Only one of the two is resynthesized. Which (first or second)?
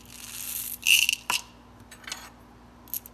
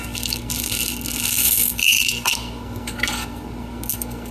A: second